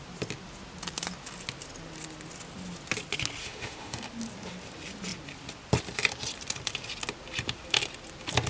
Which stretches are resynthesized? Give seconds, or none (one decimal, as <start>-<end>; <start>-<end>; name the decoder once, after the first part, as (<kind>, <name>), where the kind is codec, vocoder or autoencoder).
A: 3.4-4.1 (autoencoder, DAC-VAE)